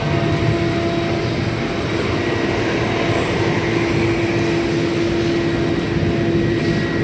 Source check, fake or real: real